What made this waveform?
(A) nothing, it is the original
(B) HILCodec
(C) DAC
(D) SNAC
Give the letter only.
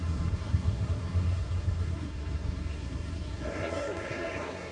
D